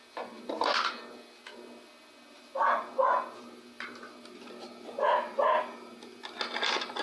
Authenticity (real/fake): real